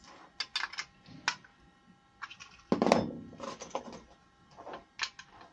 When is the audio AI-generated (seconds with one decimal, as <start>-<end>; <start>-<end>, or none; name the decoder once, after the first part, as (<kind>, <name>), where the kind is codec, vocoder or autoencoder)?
none